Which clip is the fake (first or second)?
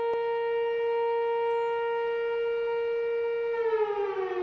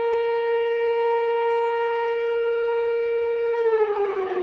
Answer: second